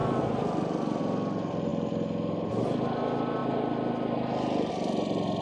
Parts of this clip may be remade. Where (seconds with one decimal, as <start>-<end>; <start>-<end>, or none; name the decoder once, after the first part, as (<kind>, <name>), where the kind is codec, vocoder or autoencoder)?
0.0-1.0 (vocoder, BigVGAN v2)